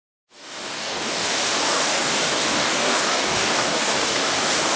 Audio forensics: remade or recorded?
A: remade